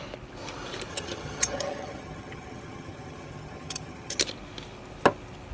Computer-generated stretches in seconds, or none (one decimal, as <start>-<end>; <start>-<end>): 0.9-4.2